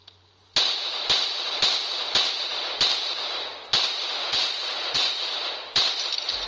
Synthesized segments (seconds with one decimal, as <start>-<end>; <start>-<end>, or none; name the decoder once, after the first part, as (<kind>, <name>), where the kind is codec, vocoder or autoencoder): 4.2-5.2 (vocoder, Vocos)